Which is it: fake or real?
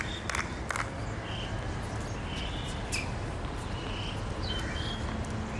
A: real